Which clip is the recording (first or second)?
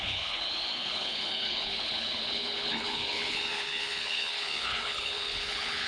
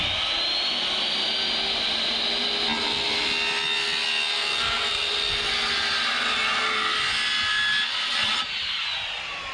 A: second